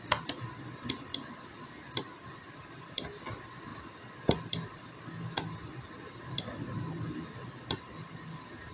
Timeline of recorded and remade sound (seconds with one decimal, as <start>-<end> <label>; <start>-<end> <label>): 0.0-8.7 recorded